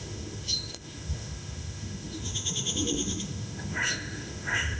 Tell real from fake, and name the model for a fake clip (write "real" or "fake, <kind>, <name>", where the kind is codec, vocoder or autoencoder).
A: fake, autoencoder, DAC-VAE